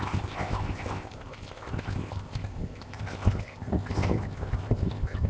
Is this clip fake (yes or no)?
yes